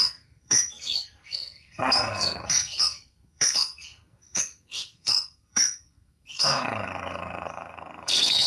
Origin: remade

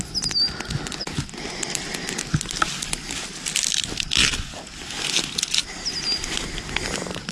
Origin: recorded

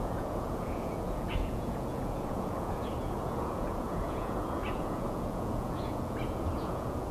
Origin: remade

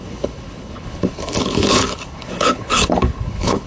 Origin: remade